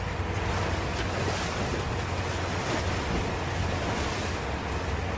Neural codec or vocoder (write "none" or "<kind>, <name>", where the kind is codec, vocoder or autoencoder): none